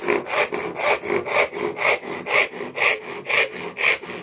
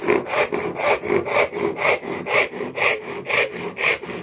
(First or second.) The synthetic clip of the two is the second